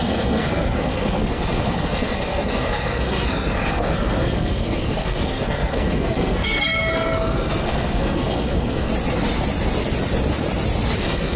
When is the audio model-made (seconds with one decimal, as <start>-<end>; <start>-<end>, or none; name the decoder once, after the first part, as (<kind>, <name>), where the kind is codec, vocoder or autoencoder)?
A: 0.0-8.9 (codec, SNAC); 11.0-11.4